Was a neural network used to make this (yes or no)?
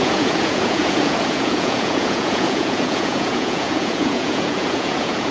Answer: yes